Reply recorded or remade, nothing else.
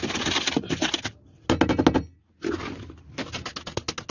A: recorded